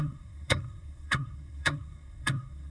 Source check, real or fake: fake